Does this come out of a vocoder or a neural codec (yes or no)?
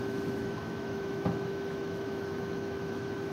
yes